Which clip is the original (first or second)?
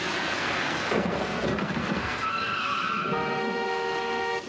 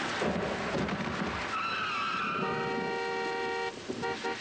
second